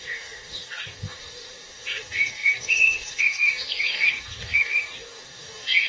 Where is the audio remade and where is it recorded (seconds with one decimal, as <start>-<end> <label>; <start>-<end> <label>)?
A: 0.0-5.9 remade